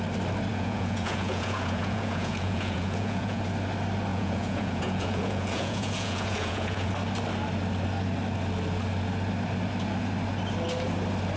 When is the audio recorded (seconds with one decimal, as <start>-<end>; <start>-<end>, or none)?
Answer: 0.0-0.5; 3.4-4.1; 6.9-11.4